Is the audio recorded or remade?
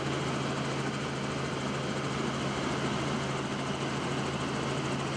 recorded